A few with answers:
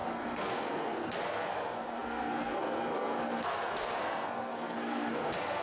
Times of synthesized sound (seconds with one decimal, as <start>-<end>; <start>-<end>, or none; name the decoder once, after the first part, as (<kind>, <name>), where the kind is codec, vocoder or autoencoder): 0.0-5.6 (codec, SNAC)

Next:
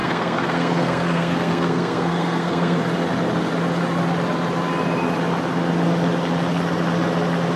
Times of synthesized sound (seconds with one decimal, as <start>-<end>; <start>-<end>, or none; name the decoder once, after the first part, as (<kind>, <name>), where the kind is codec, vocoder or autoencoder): 0.0-2.8 (codec, SNAC)

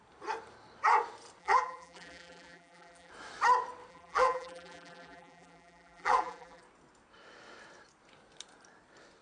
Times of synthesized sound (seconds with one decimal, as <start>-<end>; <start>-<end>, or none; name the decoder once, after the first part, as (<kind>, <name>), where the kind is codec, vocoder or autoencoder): 1.4-3.1 (vocoder, BigVGAN v2); 3.9-6.6

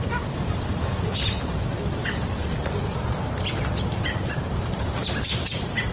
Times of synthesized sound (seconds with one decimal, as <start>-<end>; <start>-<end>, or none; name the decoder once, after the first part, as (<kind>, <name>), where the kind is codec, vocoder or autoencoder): 0.0-1.7 (vocoder, BigVGAN v2); 3.9-5.9